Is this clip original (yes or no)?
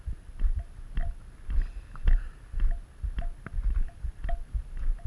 yes